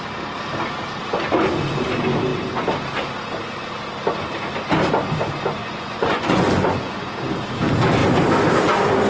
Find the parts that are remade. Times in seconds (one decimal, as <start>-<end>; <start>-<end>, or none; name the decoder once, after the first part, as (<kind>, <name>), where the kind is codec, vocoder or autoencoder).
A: 5.6-7.1 (vocoder, Vocos)